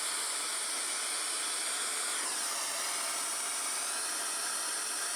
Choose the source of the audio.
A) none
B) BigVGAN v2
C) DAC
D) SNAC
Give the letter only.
A